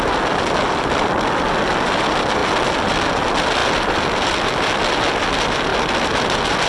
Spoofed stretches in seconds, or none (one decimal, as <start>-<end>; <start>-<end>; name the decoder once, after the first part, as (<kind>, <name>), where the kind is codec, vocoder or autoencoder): none